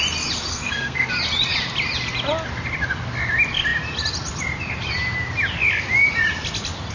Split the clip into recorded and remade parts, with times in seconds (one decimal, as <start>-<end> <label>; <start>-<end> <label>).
0.0-0.5 recorded; 0.5-1.1 remade; 1.1-6.9 recorded